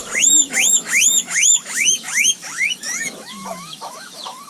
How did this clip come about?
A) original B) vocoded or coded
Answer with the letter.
B